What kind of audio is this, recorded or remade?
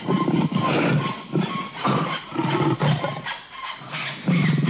recorded